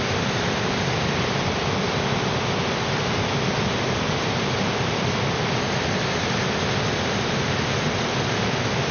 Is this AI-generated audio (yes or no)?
no